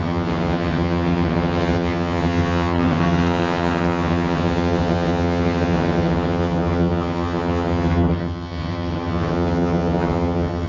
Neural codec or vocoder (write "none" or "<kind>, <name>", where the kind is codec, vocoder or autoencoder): vocoder, HiFi-GAN